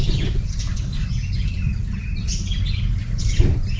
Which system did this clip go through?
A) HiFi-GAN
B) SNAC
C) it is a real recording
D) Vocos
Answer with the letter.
C